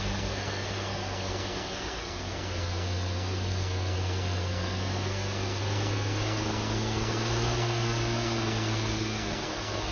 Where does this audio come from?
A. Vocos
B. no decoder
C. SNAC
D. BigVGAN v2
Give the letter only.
C